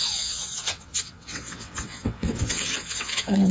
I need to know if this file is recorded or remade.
remade